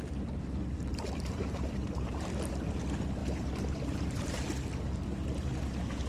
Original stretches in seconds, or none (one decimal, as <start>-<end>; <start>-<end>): 0.0-0.9; 2.5-3.2; 4.4-6.1